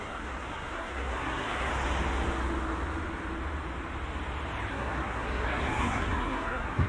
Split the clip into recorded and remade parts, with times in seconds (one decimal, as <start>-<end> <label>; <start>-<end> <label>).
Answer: 0.0-1.7 remade; 1.7-4.7 recorded; 4.7-6.9 remade